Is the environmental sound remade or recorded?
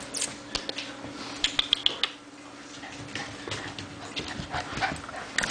recorded